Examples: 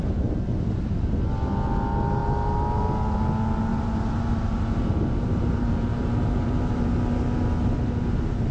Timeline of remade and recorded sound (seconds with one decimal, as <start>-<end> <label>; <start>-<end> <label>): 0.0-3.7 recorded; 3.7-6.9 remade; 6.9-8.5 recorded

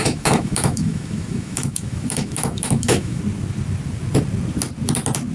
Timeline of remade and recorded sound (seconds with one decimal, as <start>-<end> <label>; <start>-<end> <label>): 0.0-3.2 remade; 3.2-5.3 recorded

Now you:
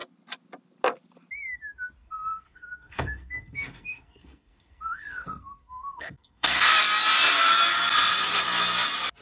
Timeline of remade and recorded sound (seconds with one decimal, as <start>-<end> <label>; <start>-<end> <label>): 0.0-2.0 recorded; 2.0-6.8 remade; 6.8-9.2 recorded

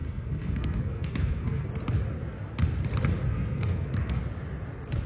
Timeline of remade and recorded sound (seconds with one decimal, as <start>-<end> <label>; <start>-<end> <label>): 0.0-1.7 remade; 1.7-3.3 recorded; 3.3-4.2 remade; 4.2-5.1 recorded

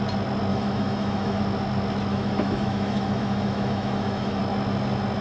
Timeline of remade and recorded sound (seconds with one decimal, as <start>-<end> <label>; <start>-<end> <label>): 0.0-0.5 recorded; 0.5-1.4 remade; 1.4-2.1 recorded; 2.1-4.4 remade; 4.4-5.2 recorded